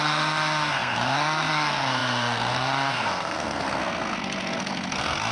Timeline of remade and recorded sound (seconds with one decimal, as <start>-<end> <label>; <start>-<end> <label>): 0.0-5.3 remade